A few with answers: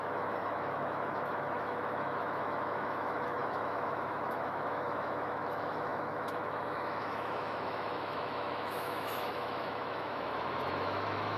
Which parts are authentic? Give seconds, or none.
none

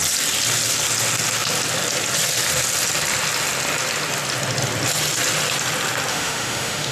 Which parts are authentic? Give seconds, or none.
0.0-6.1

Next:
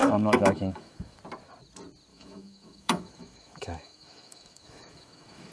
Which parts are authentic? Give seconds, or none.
1.2-2.1